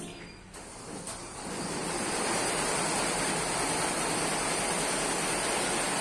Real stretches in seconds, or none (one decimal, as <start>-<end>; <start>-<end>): 0.0-6.0